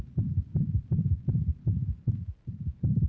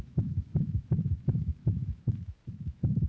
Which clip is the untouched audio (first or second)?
first